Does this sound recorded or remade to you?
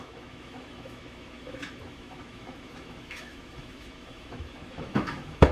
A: remade